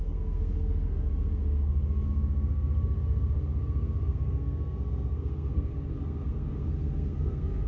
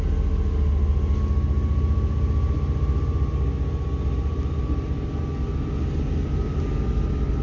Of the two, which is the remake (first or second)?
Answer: first